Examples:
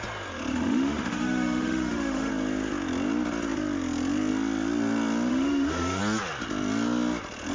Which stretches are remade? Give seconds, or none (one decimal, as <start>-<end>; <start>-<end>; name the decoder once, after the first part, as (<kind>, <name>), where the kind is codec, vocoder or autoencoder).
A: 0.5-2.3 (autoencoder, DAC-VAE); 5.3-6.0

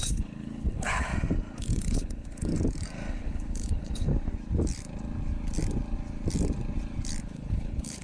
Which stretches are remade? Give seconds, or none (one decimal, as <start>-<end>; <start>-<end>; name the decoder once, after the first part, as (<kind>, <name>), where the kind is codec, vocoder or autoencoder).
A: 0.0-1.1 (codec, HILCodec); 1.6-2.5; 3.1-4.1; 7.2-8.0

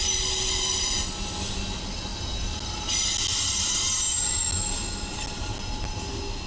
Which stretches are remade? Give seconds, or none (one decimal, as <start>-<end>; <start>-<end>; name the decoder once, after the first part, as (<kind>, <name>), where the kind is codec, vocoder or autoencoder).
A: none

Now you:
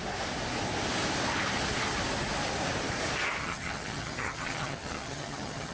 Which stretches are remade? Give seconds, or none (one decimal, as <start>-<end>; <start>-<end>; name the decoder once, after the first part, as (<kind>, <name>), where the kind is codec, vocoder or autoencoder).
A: 3.4-5.7 (vocoder, HiFi-GAN)